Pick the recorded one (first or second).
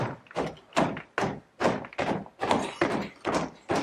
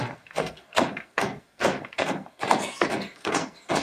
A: first